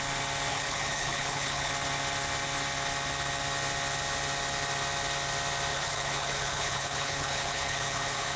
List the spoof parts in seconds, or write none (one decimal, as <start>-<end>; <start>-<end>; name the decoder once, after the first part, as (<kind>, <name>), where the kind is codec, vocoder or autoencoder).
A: 0.5-1.7 (codec, HILCodec); 5.7-8.4